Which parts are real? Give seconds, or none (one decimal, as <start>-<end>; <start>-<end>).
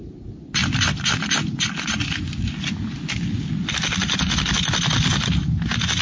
0.0-6.0